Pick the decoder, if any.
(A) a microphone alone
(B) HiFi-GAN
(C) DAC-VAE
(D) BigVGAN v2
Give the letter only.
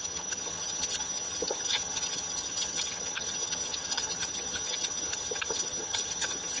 B